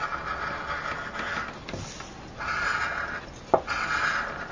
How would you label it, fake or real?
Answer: real